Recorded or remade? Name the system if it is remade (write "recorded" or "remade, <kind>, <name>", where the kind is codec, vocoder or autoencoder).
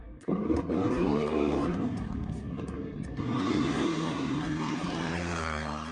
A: remade, codec, SNAC